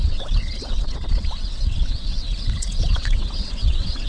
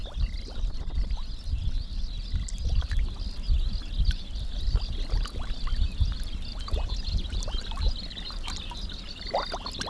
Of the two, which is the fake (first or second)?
first